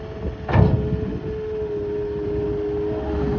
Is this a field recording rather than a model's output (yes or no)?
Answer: yes